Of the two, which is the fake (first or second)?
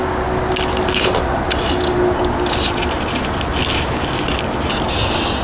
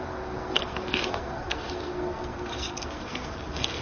second